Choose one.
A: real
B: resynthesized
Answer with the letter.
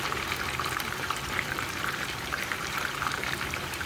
B